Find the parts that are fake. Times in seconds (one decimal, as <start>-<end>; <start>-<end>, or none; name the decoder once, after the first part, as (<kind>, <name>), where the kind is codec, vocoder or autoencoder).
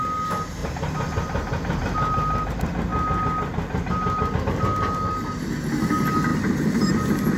0.6-2.5 (vocoder, BigVGAN v2); 6.3-6.9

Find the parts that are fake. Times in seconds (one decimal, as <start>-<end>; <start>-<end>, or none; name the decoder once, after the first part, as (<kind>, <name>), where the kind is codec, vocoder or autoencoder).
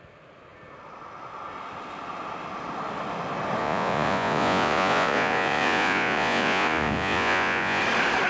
3.6-7.8 (vocoder, Vocos)